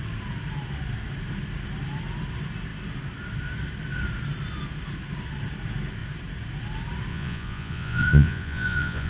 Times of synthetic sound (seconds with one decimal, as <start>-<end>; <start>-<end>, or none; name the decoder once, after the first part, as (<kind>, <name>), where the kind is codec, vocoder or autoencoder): 7.1-9.1 (vocoder, Vocos)